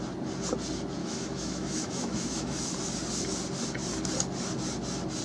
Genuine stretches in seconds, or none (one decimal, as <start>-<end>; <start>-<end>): 0.0-1.0; 2.7-5.2